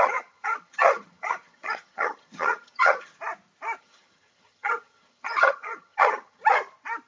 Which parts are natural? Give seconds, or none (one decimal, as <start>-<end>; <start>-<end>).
3.1-3.8; 6.4-7.1